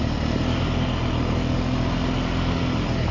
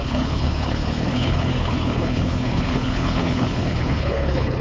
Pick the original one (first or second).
first